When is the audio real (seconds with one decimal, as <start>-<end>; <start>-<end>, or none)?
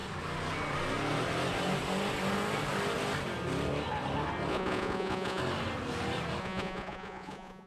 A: 0.0-4.5; 5.4-6.4